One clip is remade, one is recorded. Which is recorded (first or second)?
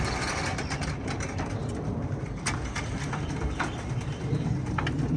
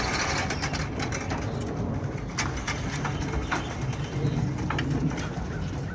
second